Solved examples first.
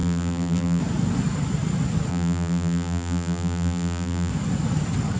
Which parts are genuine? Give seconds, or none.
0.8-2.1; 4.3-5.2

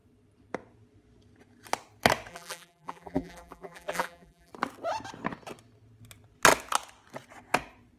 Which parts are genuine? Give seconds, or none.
0.0-2.3; 4.5-8.0

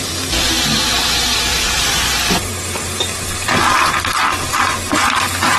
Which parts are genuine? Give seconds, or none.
0.0-1.5; 2.3-5.6

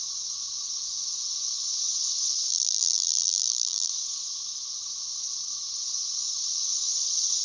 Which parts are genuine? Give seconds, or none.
0.0-2.5; 3.9-7.4

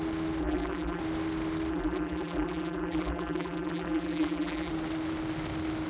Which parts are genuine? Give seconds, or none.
0.0-0.4; 1.0-1.7; 4.7-5.9

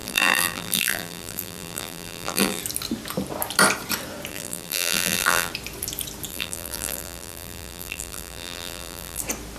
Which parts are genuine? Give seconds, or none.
2.6-4.3; 5.5-6.3; 9.2-9.6